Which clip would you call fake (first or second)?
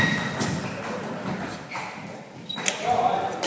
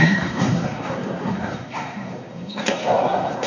second